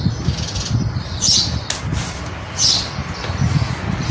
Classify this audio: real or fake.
real